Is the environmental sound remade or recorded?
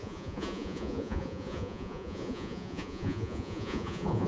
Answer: remade